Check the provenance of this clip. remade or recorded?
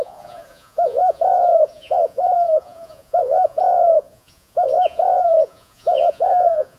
remade